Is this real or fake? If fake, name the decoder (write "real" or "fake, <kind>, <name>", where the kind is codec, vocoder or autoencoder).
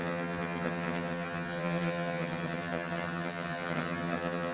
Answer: fake, vocoder, HiFi-GAN